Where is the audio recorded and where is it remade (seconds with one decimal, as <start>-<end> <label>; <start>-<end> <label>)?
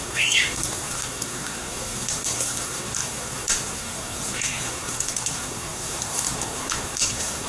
0.0-7.5 remade